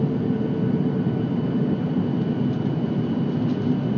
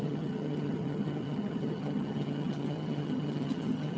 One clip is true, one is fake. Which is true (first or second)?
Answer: first